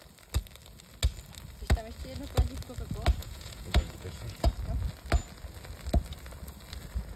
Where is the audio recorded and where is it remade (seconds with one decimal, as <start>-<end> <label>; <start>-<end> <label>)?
0.0-3.2 recorded; 3.2-4.5 remade; 4.5-7.2 recorded